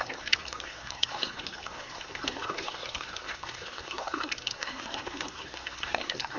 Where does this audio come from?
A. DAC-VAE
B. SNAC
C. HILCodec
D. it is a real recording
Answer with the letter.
B